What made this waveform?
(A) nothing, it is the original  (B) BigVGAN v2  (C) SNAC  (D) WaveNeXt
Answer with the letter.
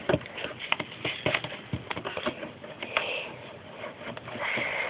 A